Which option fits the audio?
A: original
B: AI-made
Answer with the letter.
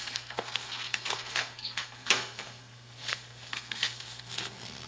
B